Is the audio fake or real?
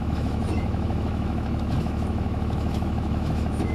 fake